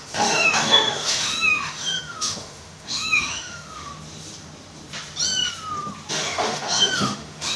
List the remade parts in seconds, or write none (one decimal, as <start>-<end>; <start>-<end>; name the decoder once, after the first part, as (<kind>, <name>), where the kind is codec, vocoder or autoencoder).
0.0-3.9 (autoencoder, DAC-VAE); 6.1-7.6